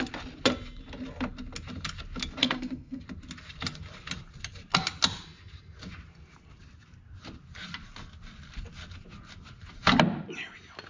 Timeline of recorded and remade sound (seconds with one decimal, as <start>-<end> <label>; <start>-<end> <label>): 0.0-2.4 recorded; 2.4-3.0 remade; 3.0-10.9 recorded